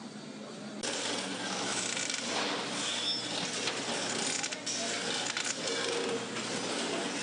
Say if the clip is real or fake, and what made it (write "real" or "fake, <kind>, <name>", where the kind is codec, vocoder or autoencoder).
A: real